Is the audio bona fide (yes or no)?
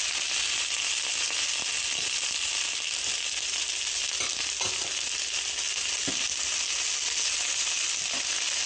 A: yes